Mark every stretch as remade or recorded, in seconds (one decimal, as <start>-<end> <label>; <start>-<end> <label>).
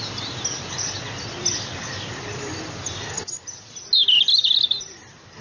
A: 0.0-5.4 recorded